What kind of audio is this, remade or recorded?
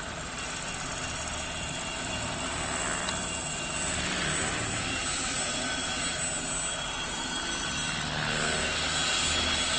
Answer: recorded